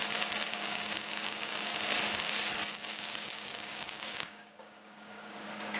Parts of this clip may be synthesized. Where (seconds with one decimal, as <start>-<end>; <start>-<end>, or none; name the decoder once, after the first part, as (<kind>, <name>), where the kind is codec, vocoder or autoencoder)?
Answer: 0.5-1.7 (codec, DAC); 2.7-5.8